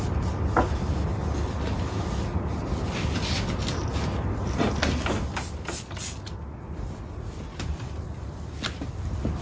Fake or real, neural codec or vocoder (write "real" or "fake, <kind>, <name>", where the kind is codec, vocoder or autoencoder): real